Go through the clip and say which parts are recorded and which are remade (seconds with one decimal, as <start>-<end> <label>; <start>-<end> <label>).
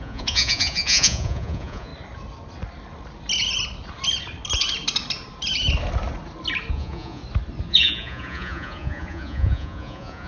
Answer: 0.0-1.9 remade; 1.9-6.7 recorded; 6.7-7.2 remade; 7.2-7.7 recorded; 7.7-10.3 remade